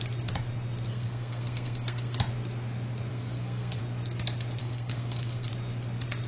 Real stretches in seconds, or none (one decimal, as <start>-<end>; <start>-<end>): 0.0-0.9; 2.2-3.1; 3.8-4.6; 5.5-6.3